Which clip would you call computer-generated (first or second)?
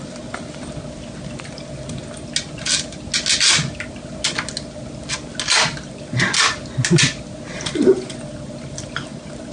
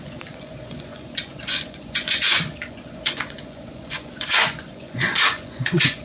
second